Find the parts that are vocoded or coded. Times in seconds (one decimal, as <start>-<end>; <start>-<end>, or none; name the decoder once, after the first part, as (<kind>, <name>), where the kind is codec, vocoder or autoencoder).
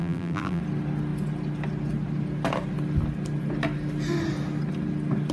0.0-0.6 (vocoder, BigVGAN v2)